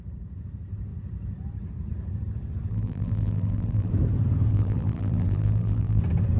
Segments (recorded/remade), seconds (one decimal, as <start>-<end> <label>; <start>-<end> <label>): 0.0-2.7 recorded; 2.7-3.9 remade; 3.9-4.5 recorded; 4.5-6.0 remade; 6.0-6.4 recorded